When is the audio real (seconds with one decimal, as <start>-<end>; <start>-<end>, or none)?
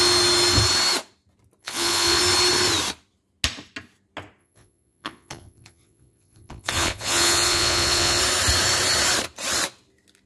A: 0.0-1.6; 2.2-4.4; 8.2-10.3